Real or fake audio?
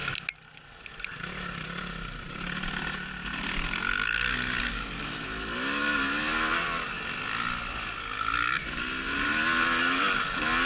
real